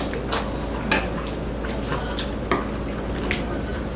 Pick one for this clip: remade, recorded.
recorded